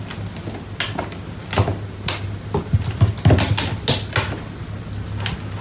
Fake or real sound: real